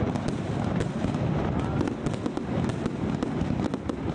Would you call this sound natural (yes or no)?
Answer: yes